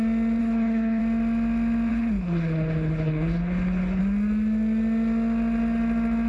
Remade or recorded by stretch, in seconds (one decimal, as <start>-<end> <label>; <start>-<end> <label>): 0.0-0.4 recorded; 0.4-1.0 remade; 1.0-1.9 recorded; 1.9-4.0 remade; 4.0-6.3 recorded